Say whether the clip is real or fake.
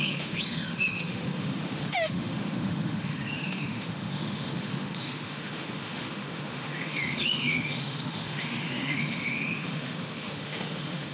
fake